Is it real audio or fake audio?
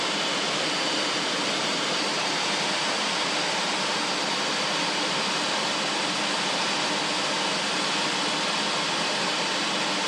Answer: real